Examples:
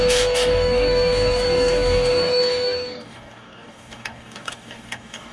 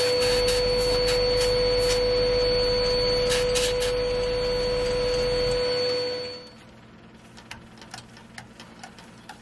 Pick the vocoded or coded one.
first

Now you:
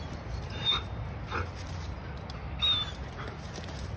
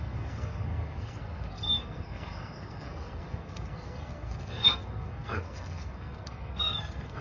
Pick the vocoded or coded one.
second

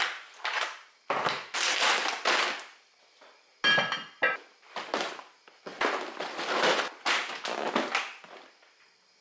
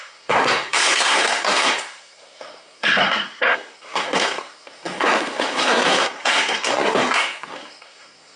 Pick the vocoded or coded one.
second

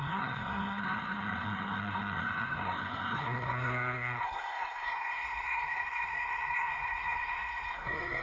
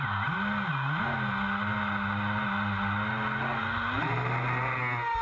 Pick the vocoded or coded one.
first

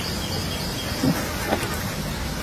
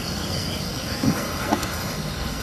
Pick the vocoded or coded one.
second